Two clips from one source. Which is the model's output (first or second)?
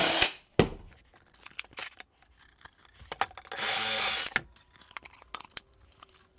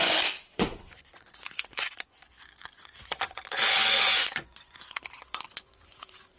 second